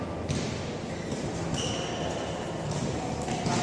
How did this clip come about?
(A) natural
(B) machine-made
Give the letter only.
A